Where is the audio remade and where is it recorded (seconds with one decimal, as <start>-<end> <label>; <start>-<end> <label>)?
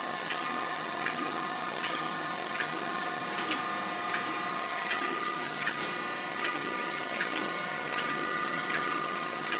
0.0-3.2 remade; 3.2-4.5 recorded; 4.5-5.8 remade; 5.8-6.3 recorded; 6.3-9.6 remade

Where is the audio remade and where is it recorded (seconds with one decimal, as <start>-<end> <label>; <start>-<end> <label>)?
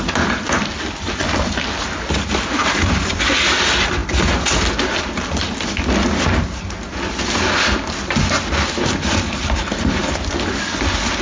0.0-11.2 recorded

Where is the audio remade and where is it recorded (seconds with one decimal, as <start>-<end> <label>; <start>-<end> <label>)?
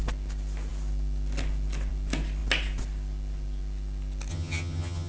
0.0-4.3 recorded; 4.3-5.1 remade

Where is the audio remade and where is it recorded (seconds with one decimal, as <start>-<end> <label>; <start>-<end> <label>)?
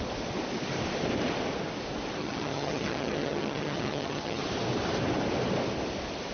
0.0-2.2 recorded; 2.2-4.4 remade; 4.4-6.3 recorded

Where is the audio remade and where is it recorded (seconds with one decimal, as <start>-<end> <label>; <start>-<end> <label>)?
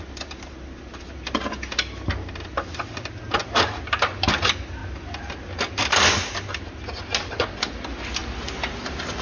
0.0-9.2 recorded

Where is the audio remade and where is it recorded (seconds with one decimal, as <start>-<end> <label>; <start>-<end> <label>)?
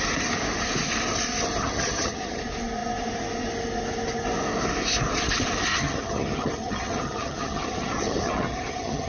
0.0-1.6 recorded; 1.6-2.4 remade; 2.4-5.7 recorded; 5.7-9.1 remade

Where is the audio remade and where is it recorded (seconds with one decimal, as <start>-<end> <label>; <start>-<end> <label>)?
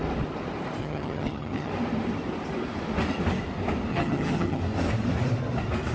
0.0-0.8 recorded; 0.8-1.7 remade; 1.7-3.9 recorded; 3.9-4.6 remade; 4.6-5.9 recorded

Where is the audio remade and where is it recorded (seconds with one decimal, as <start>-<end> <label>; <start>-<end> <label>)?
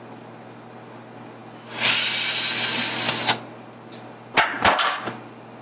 0.0-5.6 recorded